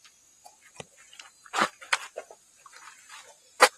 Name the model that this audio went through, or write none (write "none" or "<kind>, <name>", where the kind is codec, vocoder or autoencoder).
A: none